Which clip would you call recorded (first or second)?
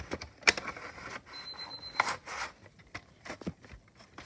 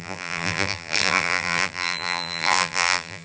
first